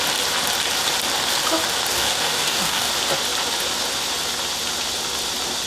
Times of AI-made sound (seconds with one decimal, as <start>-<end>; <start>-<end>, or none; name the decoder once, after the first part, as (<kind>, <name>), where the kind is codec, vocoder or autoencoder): 1.9-2.9 (codec, DAC)